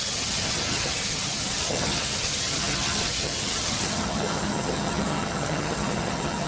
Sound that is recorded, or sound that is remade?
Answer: remade